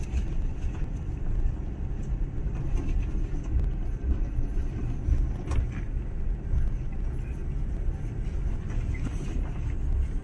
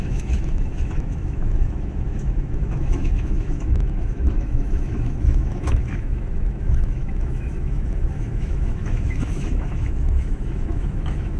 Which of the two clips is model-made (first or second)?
second